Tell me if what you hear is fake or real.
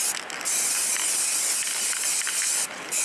real